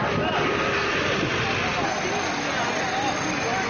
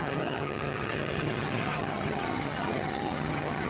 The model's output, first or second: second